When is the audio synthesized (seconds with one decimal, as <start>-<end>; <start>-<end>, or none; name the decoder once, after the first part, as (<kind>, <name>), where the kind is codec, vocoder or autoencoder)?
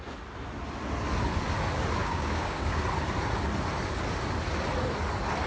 2.0-2.8 (codec, DAC)